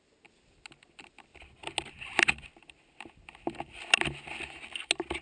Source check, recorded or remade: recorded